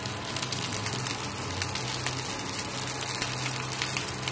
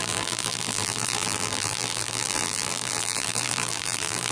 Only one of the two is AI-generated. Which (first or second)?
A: second